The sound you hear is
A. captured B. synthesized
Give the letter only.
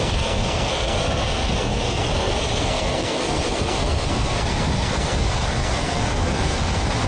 B